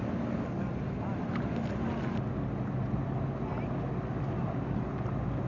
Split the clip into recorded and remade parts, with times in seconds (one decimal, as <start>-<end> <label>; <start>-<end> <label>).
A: 0.0-5.5 recorded